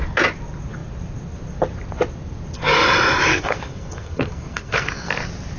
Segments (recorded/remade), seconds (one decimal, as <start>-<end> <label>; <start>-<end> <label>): 0.0-3.3 recorded; 3.3-5.1 remade; 5.1-5.6 recorded